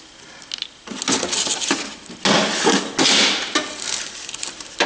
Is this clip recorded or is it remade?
recorded